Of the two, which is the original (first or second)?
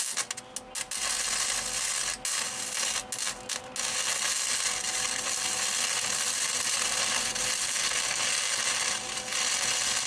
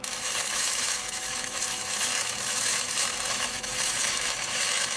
first